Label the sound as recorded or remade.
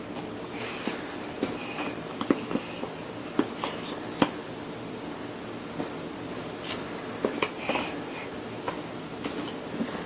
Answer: recorded